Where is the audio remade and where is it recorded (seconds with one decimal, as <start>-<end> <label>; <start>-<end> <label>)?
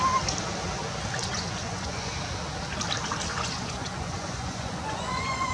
0.0-1.3 recorded; 1.3-2.1 remade; 2.1-3.3 recorded; 3.3-5.5 remade